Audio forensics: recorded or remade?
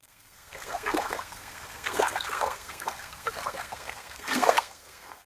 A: remade